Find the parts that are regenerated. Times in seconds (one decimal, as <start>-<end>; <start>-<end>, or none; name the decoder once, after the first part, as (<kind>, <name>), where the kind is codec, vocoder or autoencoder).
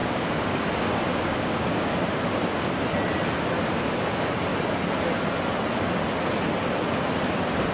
0.0-0.7 (codec, DAC); 1.1-2.0